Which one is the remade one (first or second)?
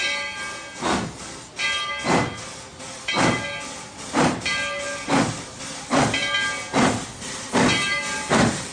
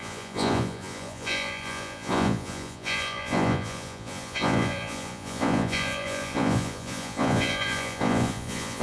second